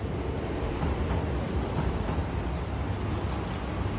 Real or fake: real